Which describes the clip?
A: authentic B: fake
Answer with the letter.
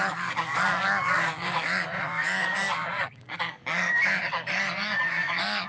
B